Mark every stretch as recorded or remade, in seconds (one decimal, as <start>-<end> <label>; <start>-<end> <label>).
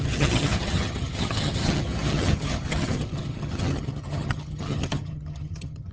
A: 0.0-5.9 remade